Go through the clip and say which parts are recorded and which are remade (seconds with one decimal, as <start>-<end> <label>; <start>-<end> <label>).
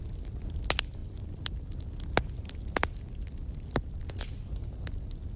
0.0-5.4 recorded